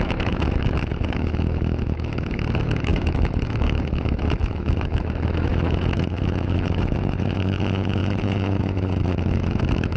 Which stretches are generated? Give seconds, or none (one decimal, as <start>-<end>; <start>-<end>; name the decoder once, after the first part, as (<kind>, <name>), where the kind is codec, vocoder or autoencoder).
0.0-10.0 (autoencoder, DAC-VAE)